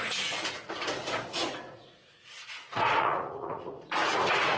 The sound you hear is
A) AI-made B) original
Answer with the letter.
A